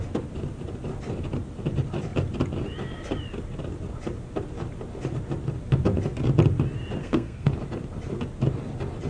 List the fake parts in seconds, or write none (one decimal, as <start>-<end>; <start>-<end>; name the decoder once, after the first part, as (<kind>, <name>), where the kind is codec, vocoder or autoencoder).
7.0-7.5 (codec, SNAC)